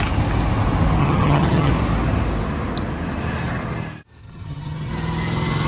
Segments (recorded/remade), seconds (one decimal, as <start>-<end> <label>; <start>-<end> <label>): 0.0-1.0 recorded; 1.0-1.7 remade; 1.7-4.2 recorded; 4.2-4.9 remade; 4.9-5.7 recorded